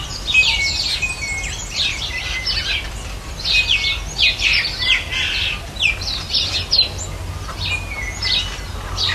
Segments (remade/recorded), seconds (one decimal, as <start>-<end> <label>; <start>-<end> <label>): 0.0-1.6 recorded; 1.6-2.6 remade; 2.6-9.1 recorded